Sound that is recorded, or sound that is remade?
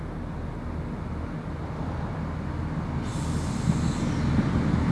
recorded